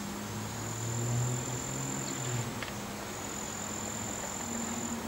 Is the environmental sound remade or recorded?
recorded